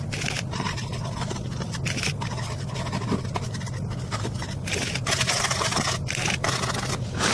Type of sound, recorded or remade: recorded